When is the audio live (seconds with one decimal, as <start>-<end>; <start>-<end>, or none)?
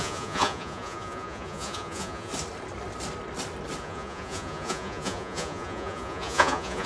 2.3-3.8